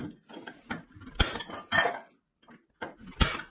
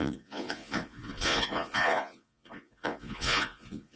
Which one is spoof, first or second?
second